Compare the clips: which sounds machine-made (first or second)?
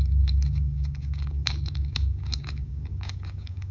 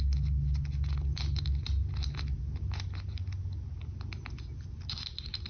first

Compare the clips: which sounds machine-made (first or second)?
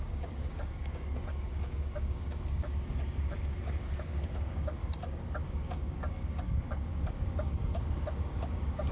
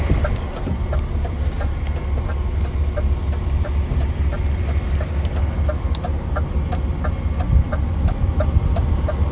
first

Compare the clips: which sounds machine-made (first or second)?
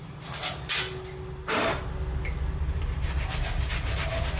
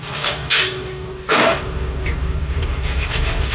second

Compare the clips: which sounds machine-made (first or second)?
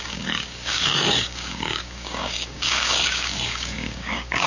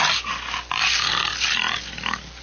first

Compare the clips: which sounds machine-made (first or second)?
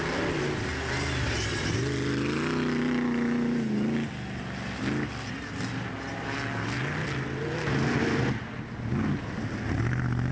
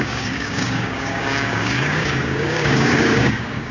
second